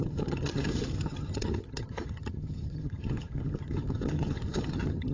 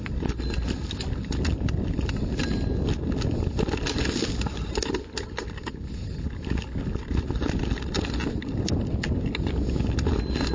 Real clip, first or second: second